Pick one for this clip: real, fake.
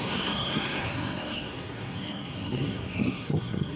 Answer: fake